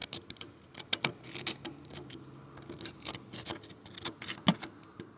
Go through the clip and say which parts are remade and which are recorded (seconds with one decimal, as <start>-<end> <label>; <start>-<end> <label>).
0.0-5.2 recorded